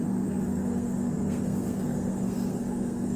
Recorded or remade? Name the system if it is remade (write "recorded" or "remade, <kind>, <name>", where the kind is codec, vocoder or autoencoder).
remade, codec, SNAC